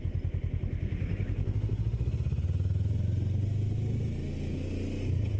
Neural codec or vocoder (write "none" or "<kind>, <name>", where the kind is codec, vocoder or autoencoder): none